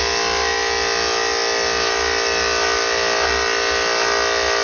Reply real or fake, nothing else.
real